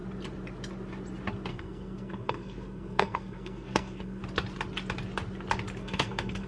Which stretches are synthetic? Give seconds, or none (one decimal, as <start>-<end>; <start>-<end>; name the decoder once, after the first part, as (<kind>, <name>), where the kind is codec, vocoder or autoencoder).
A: 1.5-4.2 (codec, SNAC); 5.8-6.5